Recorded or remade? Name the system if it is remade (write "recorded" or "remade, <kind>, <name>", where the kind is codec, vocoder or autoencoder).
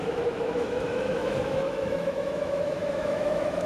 remade, autoencoder, DAC-VAE